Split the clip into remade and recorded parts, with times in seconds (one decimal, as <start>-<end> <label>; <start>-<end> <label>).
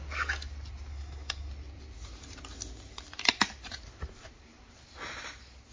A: 0.0-0.9 recorded; 0.9-1.5 remade; 1.5-5.7 recorded